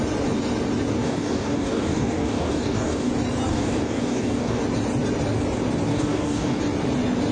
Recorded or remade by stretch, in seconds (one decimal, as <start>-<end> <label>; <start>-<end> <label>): 0.0-1.0 recorded; 1.0-3.1 remade; 3.1-3.5 recorded; 3.5-4.6 remade; 4.6-5.9 recorded; 5.9-6.6 remade; 6.6-7.3 recorded